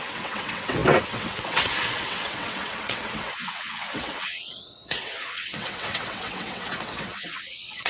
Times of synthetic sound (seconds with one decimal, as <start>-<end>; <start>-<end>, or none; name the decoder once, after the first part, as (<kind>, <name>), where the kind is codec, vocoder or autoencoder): 0.0-7.9 (vocoder, WaveNeXt)